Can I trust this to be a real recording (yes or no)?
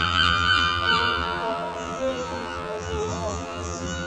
no